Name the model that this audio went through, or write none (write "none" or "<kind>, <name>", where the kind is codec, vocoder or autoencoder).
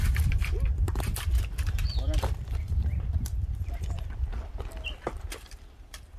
vocoder, BigVGAN v2